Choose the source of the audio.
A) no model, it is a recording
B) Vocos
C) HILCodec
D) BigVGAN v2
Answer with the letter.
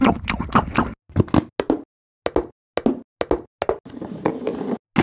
A